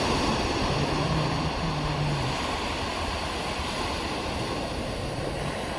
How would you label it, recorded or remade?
recorded